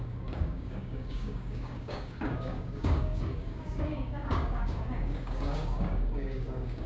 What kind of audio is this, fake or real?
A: fake